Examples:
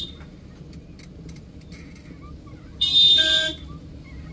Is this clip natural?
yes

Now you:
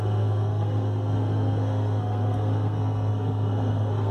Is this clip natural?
no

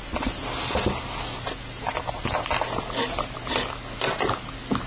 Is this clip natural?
yes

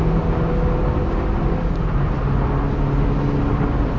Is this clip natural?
yes